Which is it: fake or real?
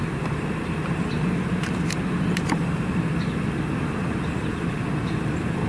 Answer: fake